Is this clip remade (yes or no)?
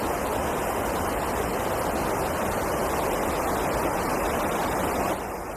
no